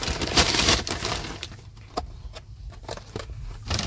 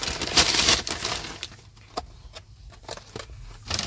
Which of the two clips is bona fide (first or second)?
second